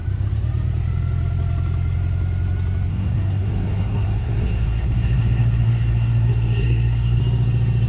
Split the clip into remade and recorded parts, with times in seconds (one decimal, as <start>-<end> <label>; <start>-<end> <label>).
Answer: 0.0-2.9 recorded; 2.9-7.2 remade; 7.2-7.9 recorded

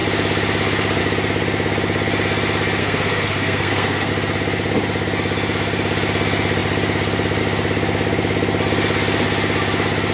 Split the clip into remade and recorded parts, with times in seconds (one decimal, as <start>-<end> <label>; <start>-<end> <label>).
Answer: 0.0-2.8 recorded; 2.8-4.1 remade; 4.1-10.1 recorded

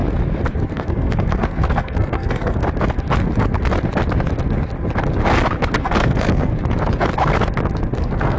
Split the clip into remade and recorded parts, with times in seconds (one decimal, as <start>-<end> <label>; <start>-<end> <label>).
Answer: 0.0-0.7 recorded; 0.7-2.6 remade; 2.6-5.8 recorded; 5.8-6.5 remade; 6.5-8.0 recorded; 8.0-8.4 remade

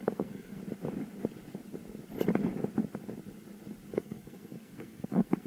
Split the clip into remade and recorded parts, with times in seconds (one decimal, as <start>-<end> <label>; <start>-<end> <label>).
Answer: 0.0-0.6 remade; 0.6-3.9 recorded; 3.9-5.5 remade

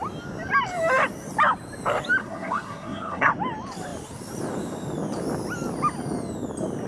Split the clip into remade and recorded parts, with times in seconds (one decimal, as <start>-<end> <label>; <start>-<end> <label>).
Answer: 0.0-2.2 recorded; 2.2-3.3 remade; 3.3-6.9 recorded

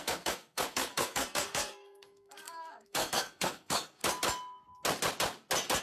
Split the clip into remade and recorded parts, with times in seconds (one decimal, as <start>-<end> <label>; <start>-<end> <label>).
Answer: 0.0-4.0 remade; 4.0-5.8 recorded

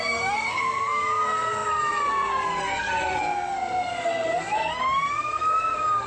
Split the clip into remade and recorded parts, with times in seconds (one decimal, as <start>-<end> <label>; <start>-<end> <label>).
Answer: 0.0-6.1 remade